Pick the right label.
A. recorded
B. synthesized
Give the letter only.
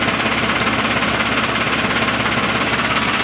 B